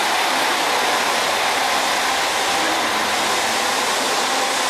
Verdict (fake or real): real